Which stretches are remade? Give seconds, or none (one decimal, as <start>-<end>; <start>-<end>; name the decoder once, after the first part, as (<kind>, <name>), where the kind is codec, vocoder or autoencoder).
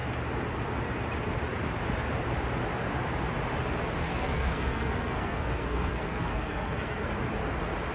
4.1-7.1 (codec, SNAC)